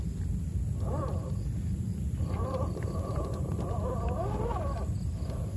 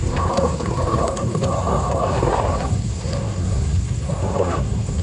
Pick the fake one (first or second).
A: second